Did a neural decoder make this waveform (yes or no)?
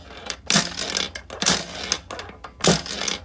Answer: no